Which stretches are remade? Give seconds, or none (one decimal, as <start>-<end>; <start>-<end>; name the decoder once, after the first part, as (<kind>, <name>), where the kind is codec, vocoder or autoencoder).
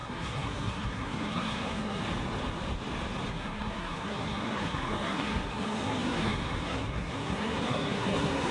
0.0-2.0 (codec, SNAC); 3.3-8.5